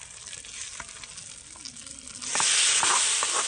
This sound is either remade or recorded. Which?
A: recorded